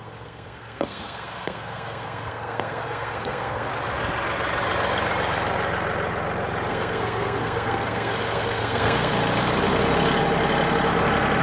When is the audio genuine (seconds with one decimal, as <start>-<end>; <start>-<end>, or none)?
3.7-6.7; 9.1-11.4